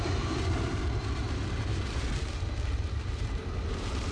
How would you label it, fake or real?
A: fake